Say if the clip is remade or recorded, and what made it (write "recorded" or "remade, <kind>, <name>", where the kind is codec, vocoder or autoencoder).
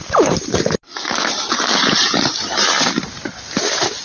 recorded